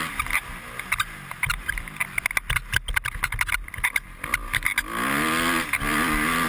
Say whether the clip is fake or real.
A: real